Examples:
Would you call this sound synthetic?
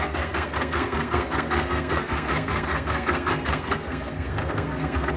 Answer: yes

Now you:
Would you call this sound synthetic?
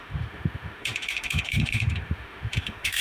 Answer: yes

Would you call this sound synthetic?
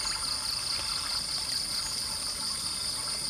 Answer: no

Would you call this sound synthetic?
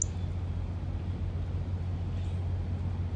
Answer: no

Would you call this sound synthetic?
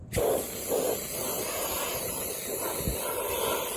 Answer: no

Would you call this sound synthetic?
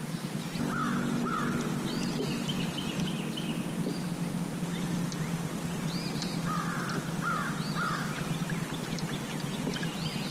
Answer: no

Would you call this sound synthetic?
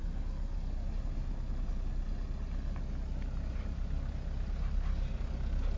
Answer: no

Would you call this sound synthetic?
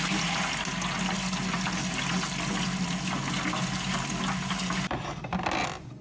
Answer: no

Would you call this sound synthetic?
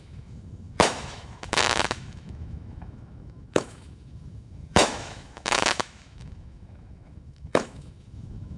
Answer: yes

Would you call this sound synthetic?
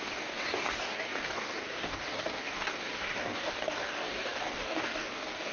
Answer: yes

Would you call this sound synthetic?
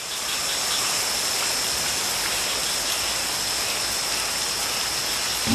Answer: no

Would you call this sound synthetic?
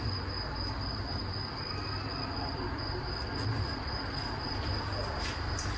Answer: no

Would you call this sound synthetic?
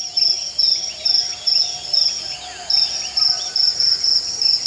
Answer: no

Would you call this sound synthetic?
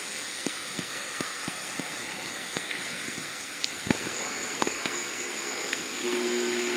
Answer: yes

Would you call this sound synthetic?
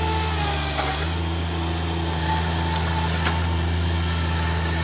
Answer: no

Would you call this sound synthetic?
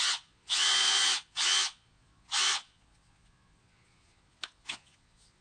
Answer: yes